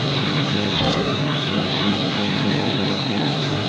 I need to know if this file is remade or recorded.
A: remade